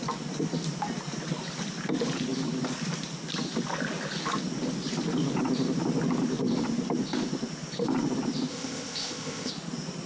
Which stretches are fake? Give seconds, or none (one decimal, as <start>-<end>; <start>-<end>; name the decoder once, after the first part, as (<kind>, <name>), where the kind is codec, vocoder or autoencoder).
8.5-9.5 (codec, ZipCodec)